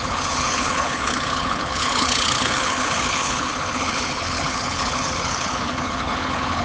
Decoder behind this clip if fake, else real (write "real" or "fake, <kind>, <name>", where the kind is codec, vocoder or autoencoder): fake, codec, HILCodec